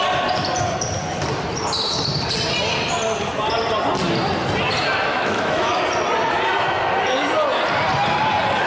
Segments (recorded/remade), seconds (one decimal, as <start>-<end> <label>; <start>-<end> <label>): 0.0-5.1 recorded; 5.1-5.8 remade; 5.8-8.7 recorded

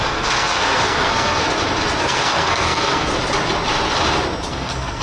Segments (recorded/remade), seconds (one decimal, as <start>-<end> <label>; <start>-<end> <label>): 0.0-1.4 remade; 1.4-2.0 recorded; 2.0-3.1 remade; 3.1-4.5 recorded; 4.5-5.0 remade

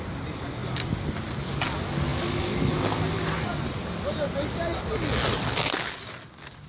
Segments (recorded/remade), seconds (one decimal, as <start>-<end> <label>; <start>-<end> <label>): 0.0-6.7 recorded

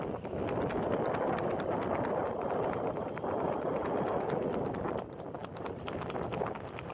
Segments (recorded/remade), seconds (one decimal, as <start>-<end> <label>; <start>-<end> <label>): 0.0-6.9 recorded

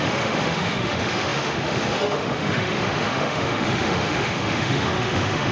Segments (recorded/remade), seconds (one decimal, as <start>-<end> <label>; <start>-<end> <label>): 0.0-5.5 remade